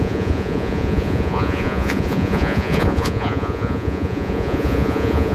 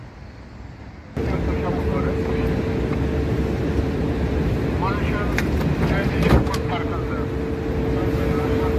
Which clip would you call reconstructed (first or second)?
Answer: first